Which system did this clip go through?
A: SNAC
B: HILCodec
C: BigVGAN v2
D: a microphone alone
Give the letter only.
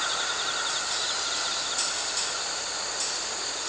D